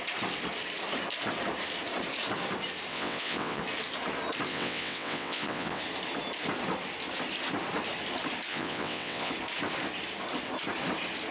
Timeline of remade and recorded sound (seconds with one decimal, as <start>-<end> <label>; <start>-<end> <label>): 0.0-2.9 recorded; 2.9-3.6 remade; 3.6-4.5 recorded; 4.5-5.8 remade; 5.8-8.5 recorded; 8.5-9.3 remade; 9.3-11.3 recorded

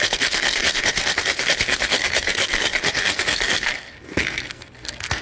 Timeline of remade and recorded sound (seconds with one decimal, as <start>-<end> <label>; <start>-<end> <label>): 0.0-5.2 remade

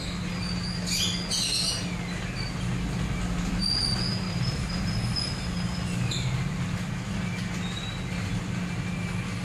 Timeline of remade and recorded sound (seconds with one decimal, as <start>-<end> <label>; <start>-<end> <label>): 0.0-4.1 recorded; 4.1-4.9 remade; 4.9-9.4 recorded

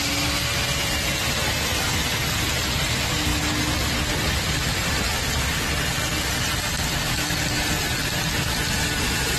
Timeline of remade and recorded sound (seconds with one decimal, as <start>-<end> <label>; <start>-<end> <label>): 0.0-9.4 recorded

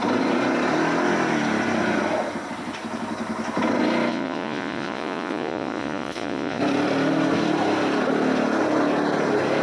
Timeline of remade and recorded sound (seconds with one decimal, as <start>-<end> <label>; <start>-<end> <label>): 0.0-4.1 recorded; 4.1-6.6 remade; 6.6-9.6 recorded

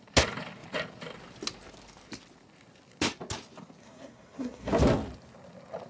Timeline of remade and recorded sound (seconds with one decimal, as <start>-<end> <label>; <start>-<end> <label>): 0.0-3.8 recorded; 3.8-4.7 remade; 4.7-5.9 recorded

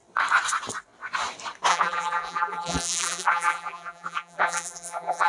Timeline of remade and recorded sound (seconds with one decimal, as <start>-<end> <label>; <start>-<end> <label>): 0.0-1.7 recorded; 1.7-5.3 remade

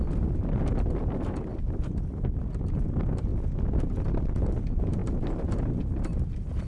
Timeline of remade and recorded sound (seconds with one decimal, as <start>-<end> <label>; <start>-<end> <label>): 0.0-1.5 recorded; 1.5-2.8 remade; 2.8-3.3 recorded; 3.3-4.0 remade; 4.0-6.7 recorded